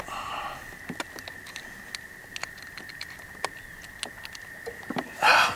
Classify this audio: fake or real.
real